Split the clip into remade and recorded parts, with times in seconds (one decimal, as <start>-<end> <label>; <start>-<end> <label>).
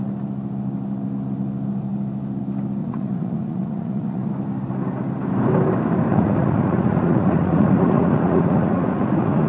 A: 0.0-2.8 recorded; 2.8-4.3 remade; 4.3-6.1 recorded; 6.1-9.5 remade